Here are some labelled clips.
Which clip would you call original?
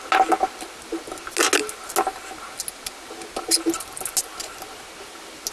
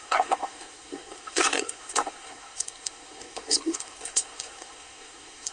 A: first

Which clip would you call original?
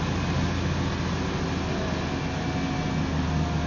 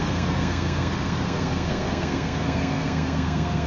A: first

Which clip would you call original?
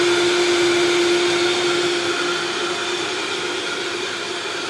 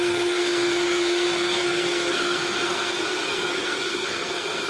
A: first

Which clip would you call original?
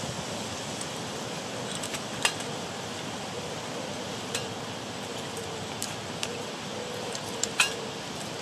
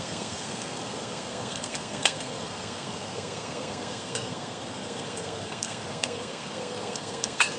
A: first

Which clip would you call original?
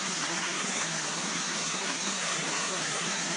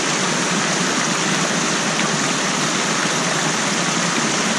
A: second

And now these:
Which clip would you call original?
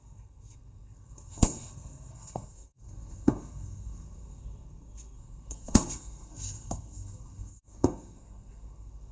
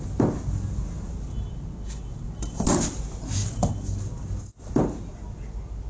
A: second